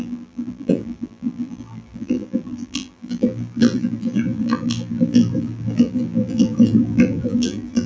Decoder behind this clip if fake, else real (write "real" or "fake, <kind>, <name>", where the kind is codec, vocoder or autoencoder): fake, vocoder, BigVGAN v2